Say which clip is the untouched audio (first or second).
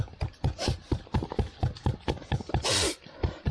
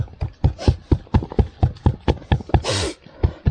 second